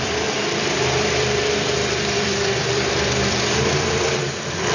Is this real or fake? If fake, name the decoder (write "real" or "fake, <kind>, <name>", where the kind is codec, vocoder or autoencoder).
fake, vocoder, BigVGAN v2